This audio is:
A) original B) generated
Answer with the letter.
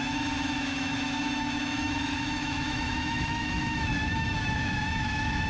B